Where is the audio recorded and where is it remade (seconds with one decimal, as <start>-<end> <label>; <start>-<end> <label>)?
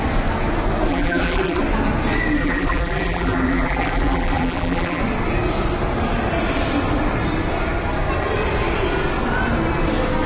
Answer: 0.0-0.9 recorded; 0.9-1.6 remade; 1.6-2.4 recorded; 2.4-5.0 remade; 5.0-10.3 recorded